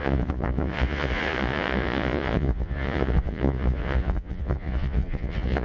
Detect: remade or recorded remade